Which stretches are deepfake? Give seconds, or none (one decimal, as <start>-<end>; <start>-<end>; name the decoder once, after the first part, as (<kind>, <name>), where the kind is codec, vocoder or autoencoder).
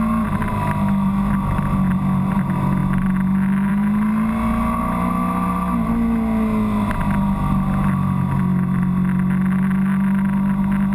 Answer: none